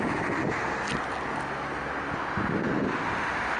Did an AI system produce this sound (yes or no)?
no